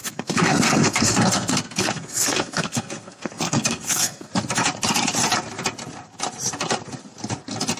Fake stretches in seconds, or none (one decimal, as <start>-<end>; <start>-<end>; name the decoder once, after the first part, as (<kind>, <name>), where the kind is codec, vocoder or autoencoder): 0.0-4.3 (codec, SNAC)